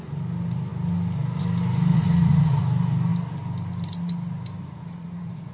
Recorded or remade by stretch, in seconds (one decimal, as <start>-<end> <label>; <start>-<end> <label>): 0.0-1.9 recorded; 1.9-2.6 remade; 2.6-4.6 recorded; 4.6-5.5 remade